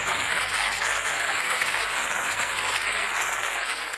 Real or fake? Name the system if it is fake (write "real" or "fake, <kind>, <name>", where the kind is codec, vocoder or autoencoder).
fake, codec, SNAC